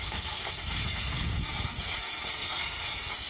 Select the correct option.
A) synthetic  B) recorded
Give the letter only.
A